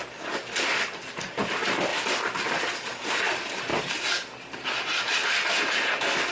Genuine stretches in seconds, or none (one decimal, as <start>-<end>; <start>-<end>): 0.0-6.3